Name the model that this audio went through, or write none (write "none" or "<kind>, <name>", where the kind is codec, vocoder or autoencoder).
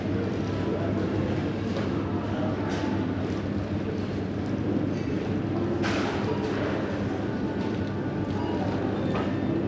none